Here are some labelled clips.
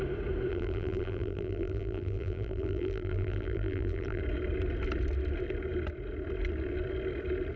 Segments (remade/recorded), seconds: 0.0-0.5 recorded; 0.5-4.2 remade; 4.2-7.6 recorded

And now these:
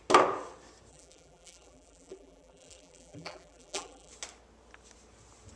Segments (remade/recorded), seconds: 0.0-0.9 recorded; 0.9-4.1 remade; 4.1-5.6 recorded